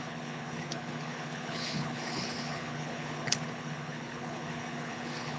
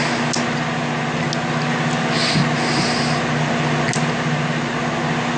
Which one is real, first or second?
second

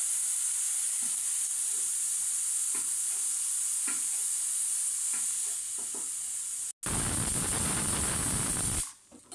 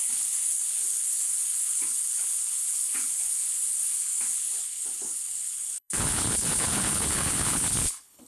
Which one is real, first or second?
first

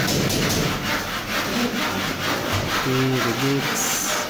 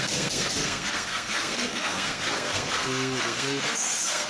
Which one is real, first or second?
first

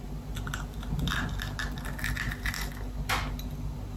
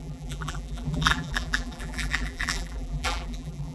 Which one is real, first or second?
first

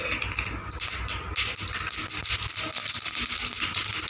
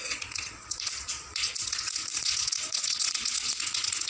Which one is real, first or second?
first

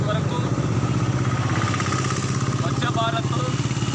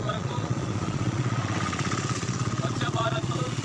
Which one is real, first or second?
first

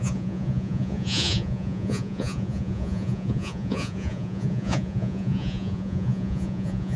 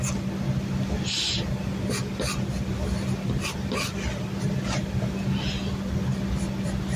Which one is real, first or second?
second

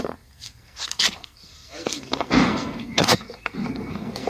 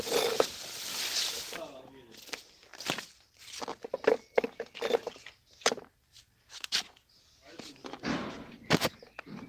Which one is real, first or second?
second